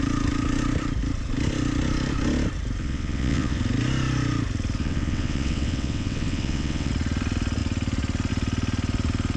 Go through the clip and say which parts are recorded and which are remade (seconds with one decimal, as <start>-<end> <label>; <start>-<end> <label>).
0.0-2.8 recorded; 2.8-3.6 remade; 3.6-4.8 recorded; 4.8-6.9 remade; 6.9-9.4 recorded